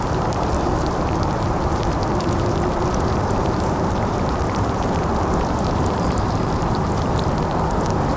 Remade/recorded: remade